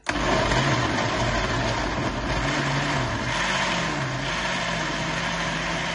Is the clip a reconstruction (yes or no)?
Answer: no